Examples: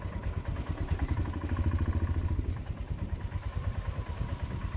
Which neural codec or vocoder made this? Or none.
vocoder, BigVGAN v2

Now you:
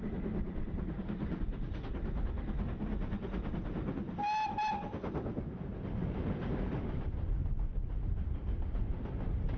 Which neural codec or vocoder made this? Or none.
none